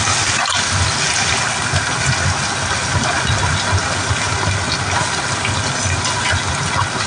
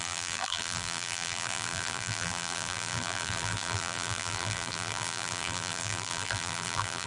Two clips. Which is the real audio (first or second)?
first